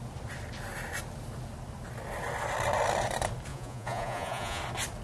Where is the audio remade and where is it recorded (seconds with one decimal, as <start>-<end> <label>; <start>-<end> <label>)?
0.0-3.5 recorded; 3.5-4.6 remade; 4.6-5.0 recorded